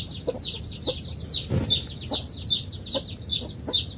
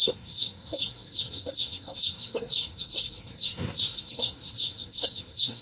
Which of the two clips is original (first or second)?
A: first